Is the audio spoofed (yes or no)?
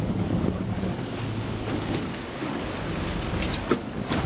yes